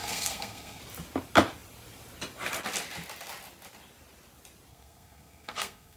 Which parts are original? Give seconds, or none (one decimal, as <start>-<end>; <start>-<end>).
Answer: 0.8-4.7